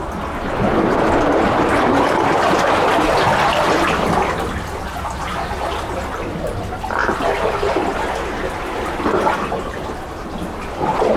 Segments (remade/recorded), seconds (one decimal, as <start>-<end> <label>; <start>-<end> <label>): 0.0-11.2 recorded